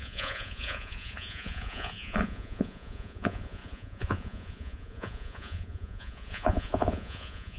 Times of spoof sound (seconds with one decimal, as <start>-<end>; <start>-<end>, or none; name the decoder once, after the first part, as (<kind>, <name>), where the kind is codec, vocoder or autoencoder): 0.0-7.6 (vocoder, Vocos)